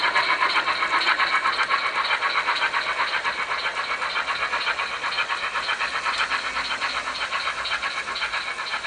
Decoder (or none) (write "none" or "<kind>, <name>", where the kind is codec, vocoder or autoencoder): none